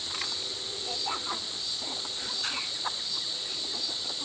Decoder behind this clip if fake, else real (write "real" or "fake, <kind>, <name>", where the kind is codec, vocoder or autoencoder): fake, vocoder, Vocos